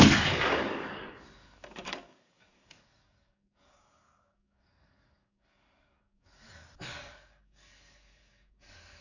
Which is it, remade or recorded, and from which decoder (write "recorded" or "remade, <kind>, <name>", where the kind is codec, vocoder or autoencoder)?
remade, codec, DAC